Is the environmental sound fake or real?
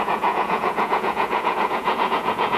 fake